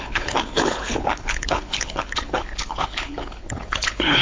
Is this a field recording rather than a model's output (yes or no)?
no